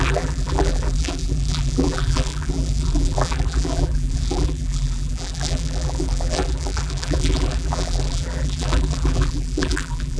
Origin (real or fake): fake